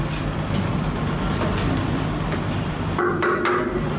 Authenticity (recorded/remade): recorded